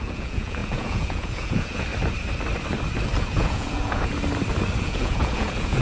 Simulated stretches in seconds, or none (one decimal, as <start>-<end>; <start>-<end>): 0.0-1.9; 3.2-4.1; 4.8-5.8